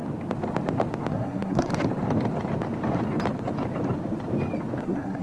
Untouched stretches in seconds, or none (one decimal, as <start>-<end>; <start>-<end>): 0.0-1.1; 1.7-4.8